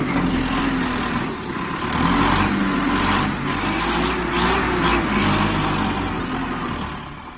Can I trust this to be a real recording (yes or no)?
yes